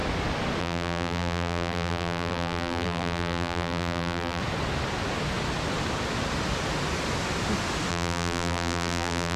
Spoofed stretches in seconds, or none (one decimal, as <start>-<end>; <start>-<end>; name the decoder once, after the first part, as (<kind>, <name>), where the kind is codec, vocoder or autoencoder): 0.6-4.4 (vocoder, BigVGAN v2); 7.9-9.4

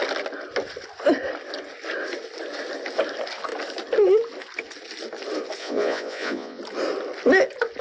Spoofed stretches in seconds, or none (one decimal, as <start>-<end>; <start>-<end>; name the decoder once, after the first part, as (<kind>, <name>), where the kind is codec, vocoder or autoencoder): 5.6-6.6 (vocoder, Vocos)